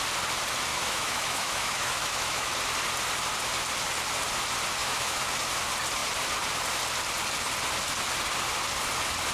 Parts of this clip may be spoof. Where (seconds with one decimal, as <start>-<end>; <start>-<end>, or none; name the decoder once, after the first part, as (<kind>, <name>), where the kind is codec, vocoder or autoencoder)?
0.7-2.5 (autoencoder, DAC-VAE); 4.8-5.3